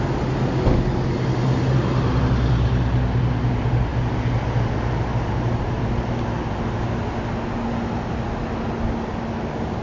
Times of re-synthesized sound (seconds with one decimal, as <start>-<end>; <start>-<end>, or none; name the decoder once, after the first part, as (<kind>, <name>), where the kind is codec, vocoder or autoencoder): none